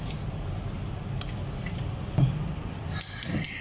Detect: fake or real real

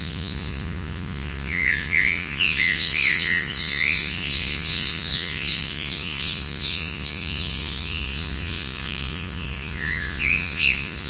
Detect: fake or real fake